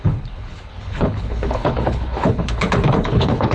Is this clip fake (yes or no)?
yes